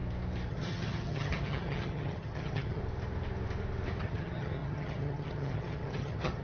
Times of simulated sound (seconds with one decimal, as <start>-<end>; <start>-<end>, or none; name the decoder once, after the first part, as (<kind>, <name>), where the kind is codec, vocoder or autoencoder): 0.5-2.8 (vocoder, HiFi-GAN); 4.0-6.4